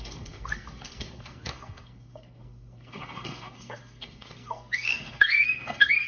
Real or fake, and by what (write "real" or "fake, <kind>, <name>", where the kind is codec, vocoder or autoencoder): fake, codec, SNAC